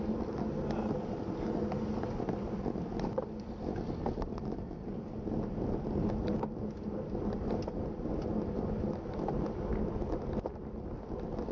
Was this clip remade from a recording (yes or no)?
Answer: no